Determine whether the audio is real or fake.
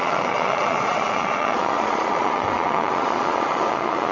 fake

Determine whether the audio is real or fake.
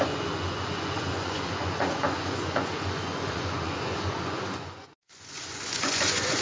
fake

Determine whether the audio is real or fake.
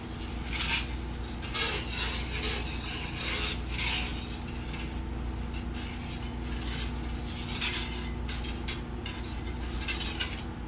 real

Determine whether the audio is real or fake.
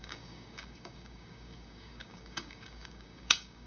fake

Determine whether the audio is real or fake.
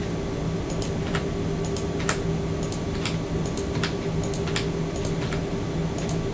real